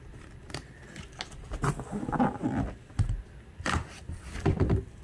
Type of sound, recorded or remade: recorded